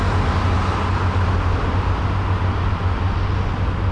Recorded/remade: recorded